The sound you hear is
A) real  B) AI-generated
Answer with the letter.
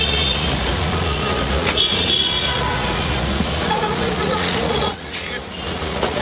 B